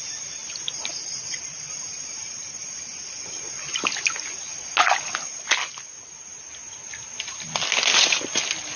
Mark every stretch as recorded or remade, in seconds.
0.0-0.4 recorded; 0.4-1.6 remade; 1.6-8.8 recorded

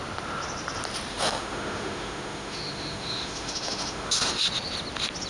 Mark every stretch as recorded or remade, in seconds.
0.0-1.1 recorded; 1.1-4.3 remade; 4.3-5.3 recorded

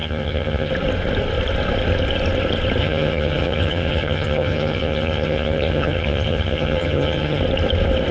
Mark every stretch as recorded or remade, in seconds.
0.0-0.7 remade; 0.7-2.8 recorded; 2.8-7.4 remade; 7.4-8.1 recorded

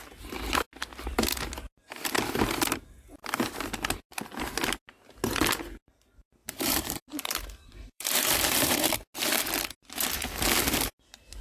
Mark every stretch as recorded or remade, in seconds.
0.0-6.4 recorded; 6.4-8.9 remade; 8.9-11.4 recorded

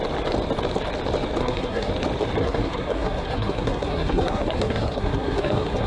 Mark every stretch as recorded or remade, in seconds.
0.0-1.4 recorded; 1.4-1.9 remade; 1.9-2.4 recorded; 2.4-5.9 remade